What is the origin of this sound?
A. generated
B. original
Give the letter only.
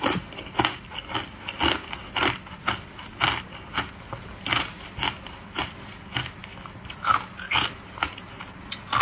B